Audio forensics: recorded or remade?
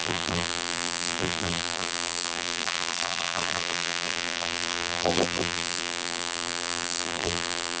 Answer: remade